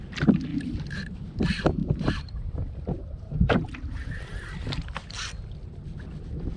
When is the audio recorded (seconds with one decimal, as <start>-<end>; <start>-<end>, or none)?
0.0-0.5; 1.4-1.8; 3.7-6.6